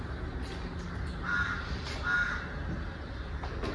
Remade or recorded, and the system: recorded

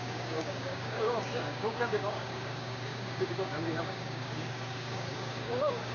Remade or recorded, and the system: remade, codec, DAC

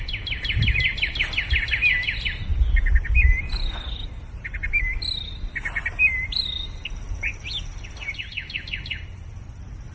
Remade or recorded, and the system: recorded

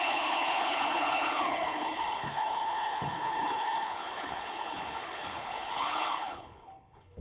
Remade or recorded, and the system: remade, codec, HILCodec